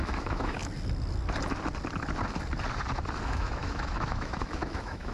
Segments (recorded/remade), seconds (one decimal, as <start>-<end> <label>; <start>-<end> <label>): 0.0-0.6 remade; 0.6-3.2 recorded; 3.2-5.1 remade